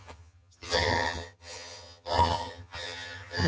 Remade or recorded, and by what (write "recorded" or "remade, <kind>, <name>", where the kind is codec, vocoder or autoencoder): remade, vocoder, HiFi-GAN